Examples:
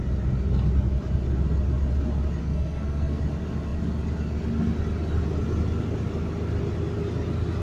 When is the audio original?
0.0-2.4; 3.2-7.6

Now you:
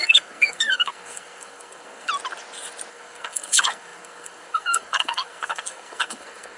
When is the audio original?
2.1-2.9

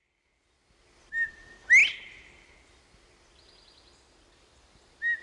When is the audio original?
0.0-5.2

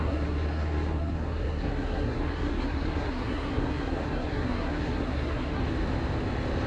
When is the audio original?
5.6-6.7

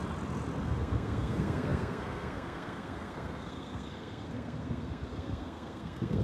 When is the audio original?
0.0-0.6

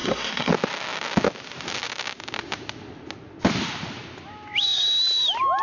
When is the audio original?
0.5-5.6

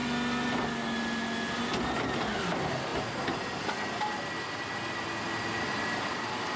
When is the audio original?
0.0-6.6